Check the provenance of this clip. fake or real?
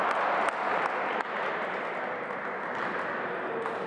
real